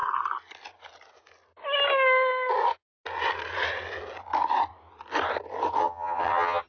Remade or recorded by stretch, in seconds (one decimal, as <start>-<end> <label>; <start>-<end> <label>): 0.0-5.8 recorded; 5.8-6.7 remade